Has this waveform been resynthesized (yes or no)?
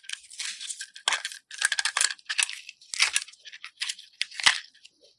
no